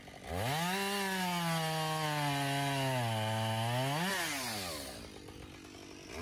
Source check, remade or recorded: recorded